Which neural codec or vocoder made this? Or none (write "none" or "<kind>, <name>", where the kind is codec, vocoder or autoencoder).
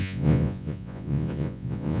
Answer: vocoder, Vocos